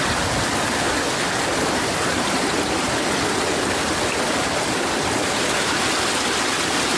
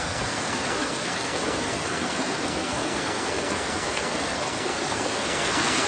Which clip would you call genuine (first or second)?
first